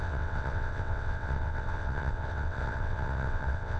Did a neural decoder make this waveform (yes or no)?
yes